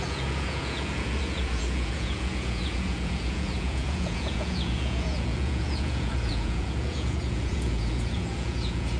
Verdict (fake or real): fake